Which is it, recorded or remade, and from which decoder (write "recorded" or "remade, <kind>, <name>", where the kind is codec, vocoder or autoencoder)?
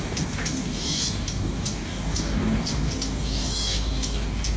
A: remade, codec, DAC